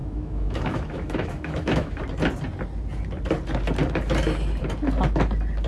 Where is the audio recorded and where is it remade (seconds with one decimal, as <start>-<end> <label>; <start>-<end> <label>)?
0.0-2.0 remade; 2.0-5.7 recorded